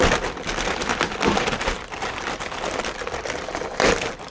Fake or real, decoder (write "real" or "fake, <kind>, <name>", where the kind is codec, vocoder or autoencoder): real